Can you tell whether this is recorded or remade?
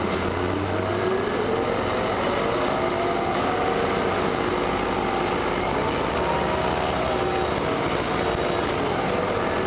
recorded